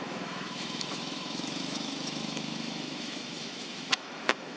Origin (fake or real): fake